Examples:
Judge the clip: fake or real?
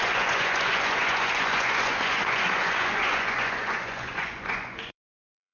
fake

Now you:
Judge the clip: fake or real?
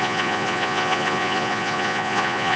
fake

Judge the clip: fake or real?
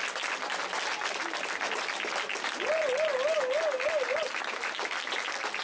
real